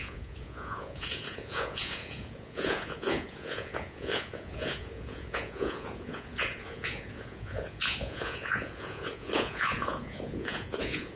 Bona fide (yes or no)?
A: no